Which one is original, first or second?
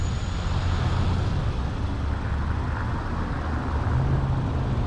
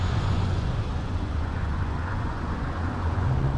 first